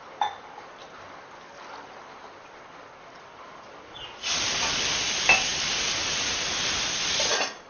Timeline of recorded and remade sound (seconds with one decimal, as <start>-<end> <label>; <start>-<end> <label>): 0.0-7.7 recorded